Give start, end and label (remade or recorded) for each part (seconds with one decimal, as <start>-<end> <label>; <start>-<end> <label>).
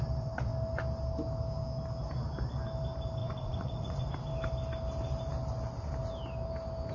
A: 0.0-3.2 recorded; 3.2-4.1 remade; 4.1-6.9 recorded